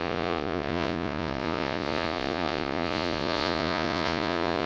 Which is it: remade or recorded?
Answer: remade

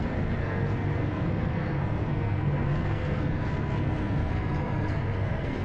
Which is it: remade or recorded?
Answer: remade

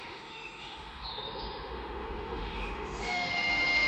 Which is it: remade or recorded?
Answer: remade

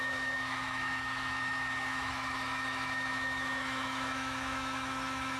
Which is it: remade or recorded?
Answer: remade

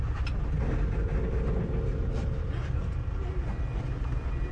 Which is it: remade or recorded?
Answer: recorded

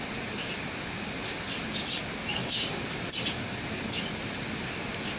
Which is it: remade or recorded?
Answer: recorded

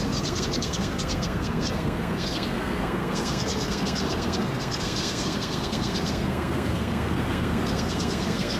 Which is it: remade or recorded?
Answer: remade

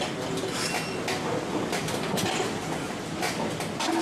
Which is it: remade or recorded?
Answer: recorded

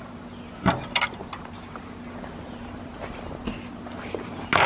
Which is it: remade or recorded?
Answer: recorded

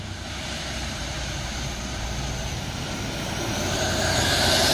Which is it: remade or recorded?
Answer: remade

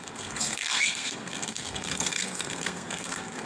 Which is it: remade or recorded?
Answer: remade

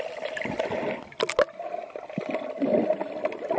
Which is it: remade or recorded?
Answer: recorded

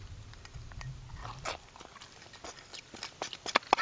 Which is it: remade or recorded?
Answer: recorded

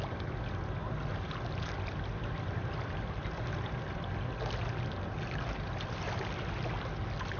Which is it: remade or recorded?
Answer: recorded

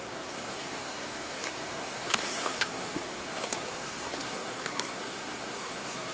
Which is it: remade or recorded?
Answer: remade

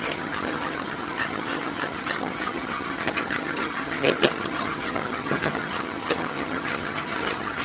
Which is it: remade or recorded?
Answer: remade